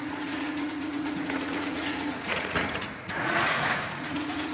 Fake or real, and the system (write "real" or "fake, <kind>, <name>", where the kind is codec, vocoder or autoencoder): fake, vocoder, Vocos